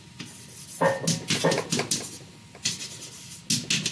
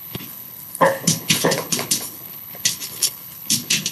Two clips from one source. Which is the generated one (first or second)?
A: second